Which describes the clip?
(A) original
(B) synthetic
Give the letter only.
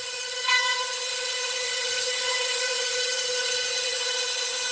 B